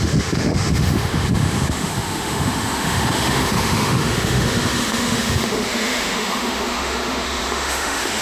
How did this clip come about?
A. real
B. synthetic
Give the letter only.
B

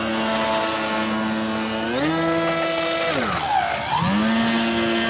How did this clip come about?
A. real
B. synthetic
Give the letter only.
A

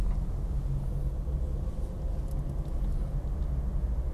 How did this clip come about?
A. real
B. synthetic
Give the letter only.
A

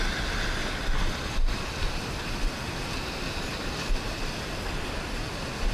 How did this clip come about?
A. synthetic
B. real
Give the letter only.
B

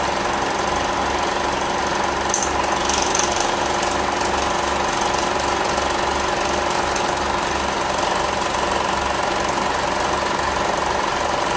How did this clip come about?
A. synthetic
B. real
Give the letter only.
B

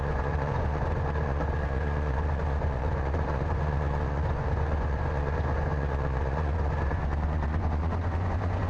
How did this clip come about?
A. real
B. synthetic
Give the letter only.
B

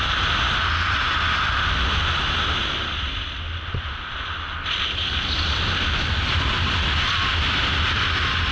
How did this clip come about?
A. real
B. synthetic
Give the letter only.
A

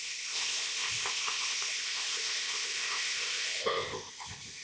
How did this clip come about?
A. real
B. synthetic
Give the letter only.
B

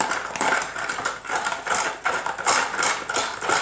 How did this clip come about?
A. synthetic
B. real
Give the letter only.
B